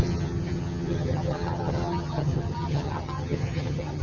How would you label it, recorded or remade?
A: remade